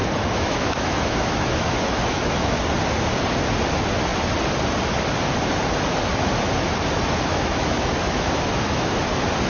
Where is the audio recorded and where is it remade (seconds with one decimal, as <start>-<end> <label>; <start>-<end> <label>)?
0.0-2.6 remade; 2.6-7.3 recorded; 7.3-9.0 remade; 9.0-9.5 recorded